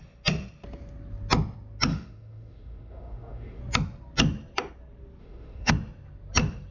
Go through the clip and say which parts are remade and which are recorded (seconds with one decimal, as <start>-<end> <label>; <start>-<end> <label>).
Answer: 0.0-1.9 recorded; 1.9-3.6 remade; 3.6-5.2 recorded; 5.2-5.7 remade; 5.7-6.7 recorded